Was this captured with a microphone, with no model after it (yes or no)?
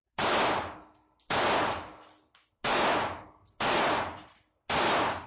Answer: yes